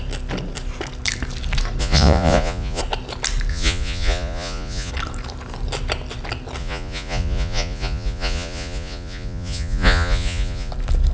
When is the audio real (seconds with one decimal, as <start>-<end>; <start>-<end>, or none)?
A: 0.0-1.8; 2.8-3.5; 4.9-6.6; 10.7-11.1